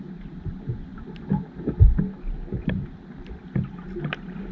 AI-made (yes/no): no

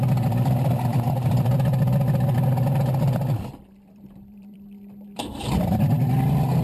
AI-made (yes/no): yes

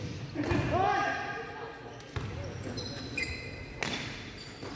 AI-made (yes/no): no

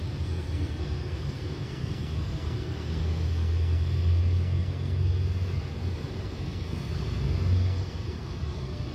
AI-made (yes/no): yes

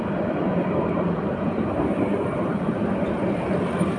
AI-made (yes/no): yes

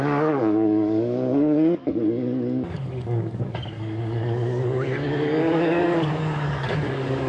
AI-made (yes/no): yes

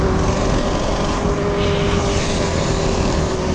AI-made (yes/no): no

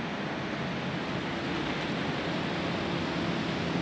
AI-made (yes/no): no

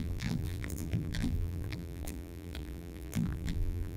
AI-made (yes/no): yes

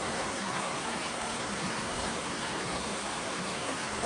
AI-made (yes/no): yes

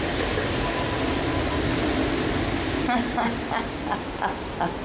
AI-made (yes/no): no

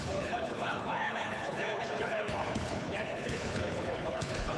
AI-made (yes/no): yes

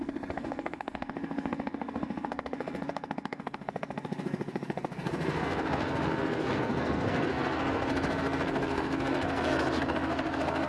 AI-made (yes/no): yes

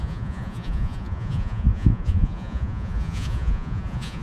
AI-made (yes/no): yes